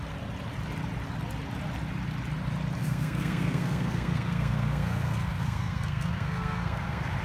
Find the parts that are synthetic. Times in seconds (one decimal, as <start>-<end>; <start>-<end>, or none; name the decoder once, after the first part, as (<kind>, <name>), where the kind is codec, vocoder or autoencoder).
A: 2.8-7.2 (codec, SNAC)